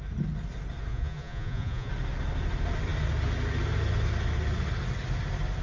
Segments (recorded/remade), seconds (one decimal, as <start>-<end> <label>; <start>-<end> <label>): 0.0-0.9 recorded; 0.9-1.9 remade; 1.9-5.6 recorded